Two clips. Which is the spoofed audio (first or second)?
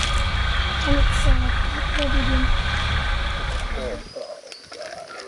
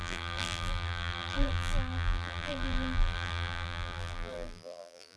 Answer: second